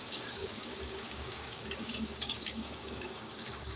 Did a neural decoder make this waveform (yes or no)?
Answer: yes